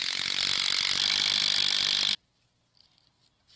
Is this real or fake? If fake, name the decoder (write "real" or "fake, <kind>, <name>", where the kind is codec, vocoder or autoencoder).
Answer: real